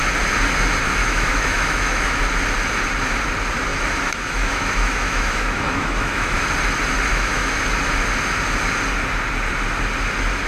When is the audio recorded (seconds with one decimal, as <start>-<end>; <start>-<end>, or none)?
0.0-1.0; 2.2-3.7; 6.4-7.1; 7.6-10.5